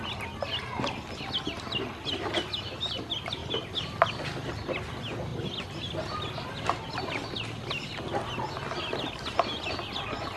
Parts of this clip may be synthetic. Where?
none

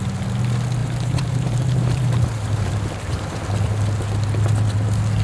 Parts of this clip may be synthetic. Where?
0.8-3.4 (vocoder, BigVGAN v2)

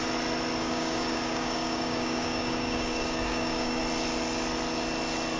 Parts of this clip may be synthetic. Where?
0.6-3.8 (codec, DAC)

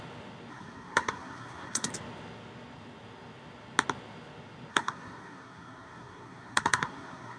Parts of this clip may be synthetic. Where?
0.5-1.9 (codec, SNAC); 4.7-7.4

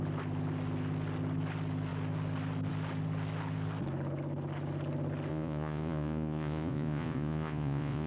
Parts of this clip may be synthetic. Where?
5.3-8.1 (vocoder, Vocos)

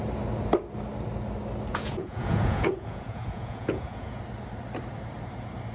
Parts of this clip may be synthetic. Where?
1.7-4.2 (vocoder, Vocos)

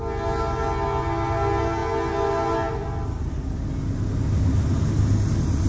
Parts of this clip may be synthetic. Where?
none

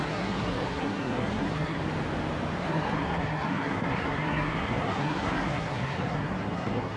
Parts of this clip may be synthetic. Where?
0.0-1.8 (codec, SNAC); 2.6-7.0